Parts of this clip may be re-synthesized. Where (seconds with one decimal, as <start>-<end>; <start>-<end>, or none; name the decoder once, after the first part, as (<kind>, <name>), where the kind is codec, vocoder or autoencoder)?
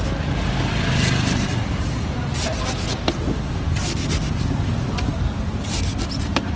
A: none